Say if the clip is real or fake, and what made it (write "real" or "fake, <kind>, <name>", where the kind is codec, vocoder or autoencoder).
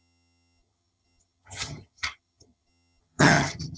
fake, vocoder, HiFi-GAN